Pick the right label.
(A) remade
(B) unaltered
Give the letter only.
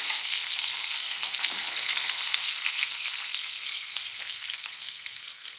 A